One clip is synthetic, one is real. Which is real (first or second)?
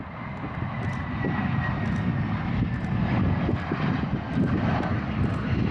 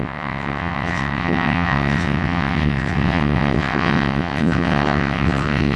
first